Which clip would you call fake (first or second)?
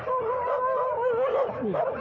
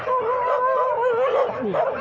first